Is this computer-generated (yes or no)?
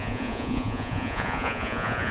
yes